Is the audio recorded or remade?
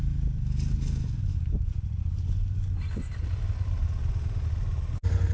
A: recorded